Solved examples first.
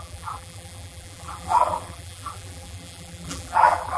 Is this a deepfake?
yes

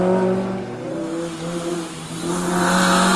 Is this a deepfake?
no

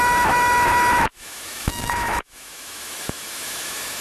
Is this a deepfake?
yes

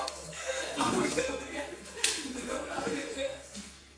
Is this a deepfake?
yes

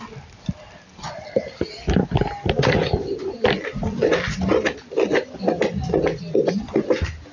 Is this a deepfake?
no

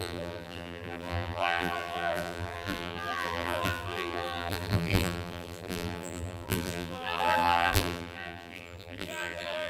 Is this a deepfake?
yes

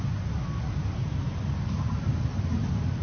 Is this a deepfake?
no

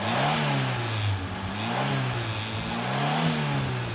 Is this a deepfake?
no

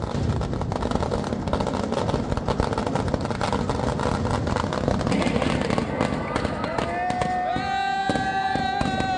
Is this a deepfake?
no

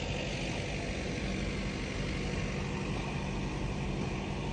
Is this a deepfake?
no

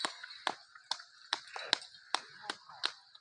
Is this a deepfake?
no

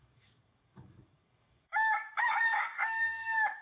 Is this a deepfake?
yes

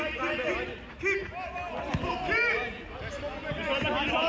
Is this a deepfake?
no